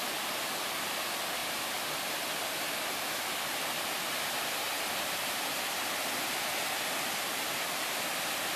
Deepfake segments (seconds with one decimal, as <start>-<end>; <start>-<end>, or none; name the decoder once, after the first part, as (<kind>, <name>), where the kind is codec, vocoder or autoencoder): none